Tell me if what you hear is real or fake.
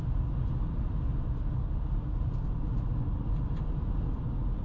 real